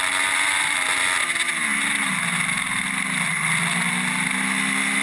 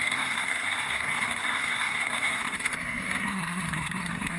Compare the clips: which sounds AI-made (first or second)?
second